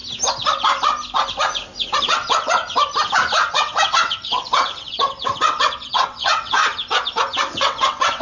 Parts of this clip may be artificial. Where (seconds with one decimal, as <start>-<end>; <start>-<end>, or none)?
2.0-2.6; 3.5-6.6; 7.5-8.2